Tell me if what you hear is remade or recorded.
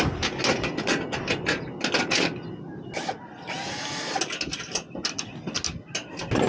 recorded